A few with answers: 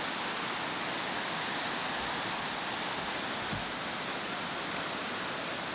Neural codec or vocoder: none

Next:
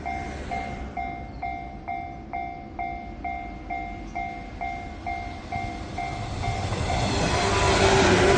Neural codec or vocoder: none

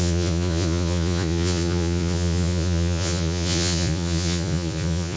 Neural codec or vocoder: vocoder, Vocos